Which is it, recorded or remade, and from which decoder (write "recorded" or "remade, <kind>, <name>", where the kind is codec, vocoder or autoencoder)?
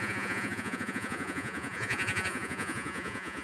remade, vocoder, Vocos